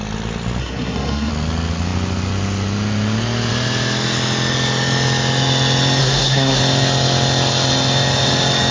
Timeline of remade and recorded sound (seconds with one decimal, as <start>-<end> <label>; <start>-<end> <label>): 0.0-0.6 recorded; 0.6-1.3 remade; 1.3-6.0 recorded; 6.0-6.6 remade; 6.6-8.7 recorded